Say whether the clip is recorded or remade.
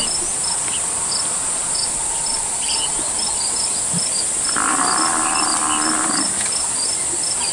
recorded